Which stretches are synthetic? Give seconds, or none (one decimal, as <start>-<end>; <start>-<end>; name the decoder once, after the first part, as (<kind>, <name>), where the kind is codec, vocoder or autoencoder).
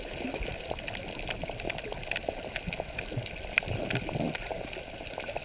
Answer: none